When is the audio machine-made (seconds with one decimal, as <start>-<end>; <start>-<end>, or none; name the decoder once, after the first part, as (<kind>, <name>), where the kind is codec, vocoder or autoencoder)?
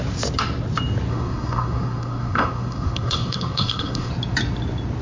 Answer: 1.1-4.1 (codec, SNAC)